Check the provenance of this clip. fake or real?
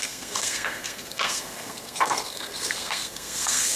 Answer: fake